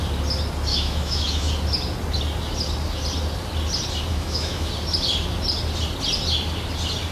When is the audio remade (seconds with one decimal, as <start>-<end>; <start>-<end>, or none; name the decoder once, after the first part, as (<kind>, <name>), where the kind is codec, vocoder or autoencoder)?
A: 0.7-1.5 (autoencoder, DAC-VAE); 4.1-4.7